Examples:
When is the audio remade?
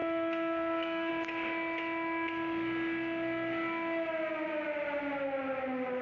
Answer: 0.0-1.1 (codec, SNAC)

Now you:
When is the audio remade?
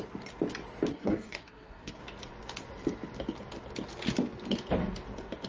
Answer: 0.9-2.0 (codec, SNAC)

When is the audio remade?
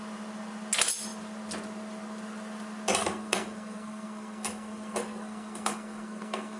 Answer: 3.0-6.6 (codec, SNAC)